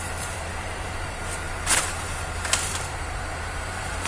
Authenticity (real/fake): fake